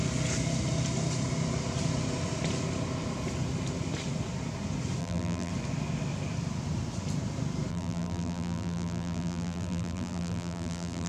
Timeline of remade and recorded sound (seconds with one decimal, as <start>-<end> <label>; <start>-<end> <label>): 0.0-5.0 recorded; 5.0-5.5 remade; 5.5-7.7 recorded; 7.7-11.1 remade